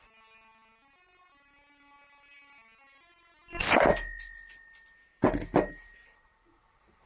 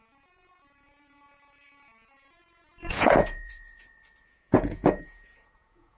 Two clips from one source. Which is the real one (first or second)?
first